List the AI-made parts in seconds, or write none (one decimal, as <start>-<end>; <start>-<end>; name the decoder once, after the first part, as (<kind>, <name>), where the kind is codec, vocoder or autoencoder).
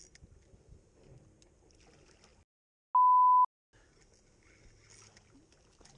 none